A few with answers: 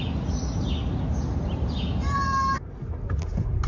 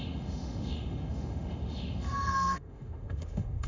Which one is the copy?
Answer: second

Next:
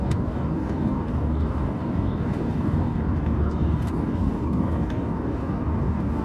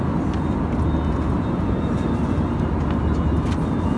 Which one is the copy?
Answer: first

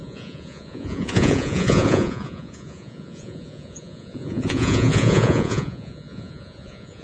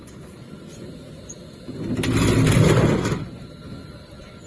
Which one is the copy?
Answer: first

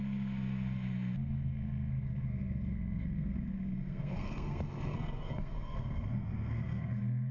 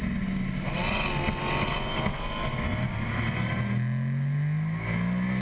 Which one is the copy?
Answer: first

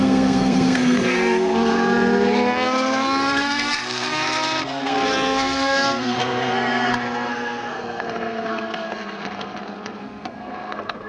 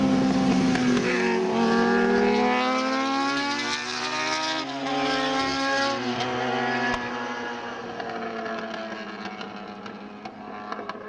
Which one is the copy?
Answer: first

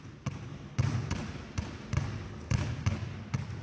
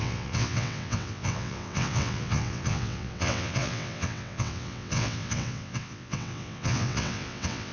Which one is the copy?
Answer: second